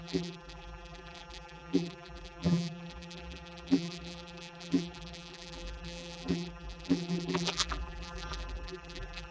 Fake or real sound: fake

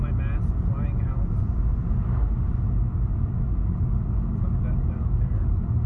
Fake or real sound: real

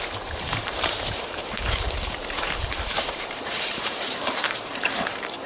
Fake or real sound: fake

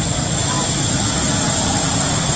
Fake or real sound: real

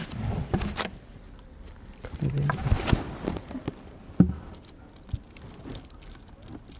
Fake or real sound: fake